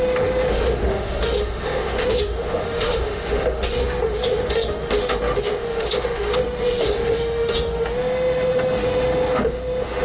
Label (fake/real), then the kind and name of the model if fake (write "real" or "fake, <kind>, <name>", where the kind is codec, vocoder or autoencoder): fake, autoencoder, DAC-VAE